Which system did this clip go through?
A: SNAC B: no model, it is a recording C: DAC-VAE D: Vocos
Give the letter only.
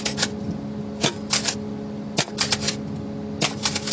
B